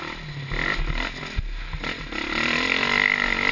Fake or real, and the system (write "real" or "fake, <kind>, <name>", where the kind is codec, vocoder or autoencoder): real